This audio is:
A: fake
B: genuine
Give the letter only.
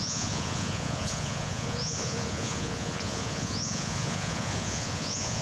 A